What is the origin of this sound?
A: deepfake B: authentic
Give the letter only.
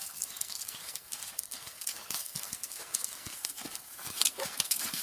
A